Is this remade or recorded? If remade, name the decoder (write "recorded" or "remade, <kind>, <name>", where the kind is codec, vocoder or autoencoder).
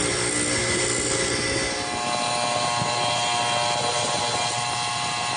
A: recorded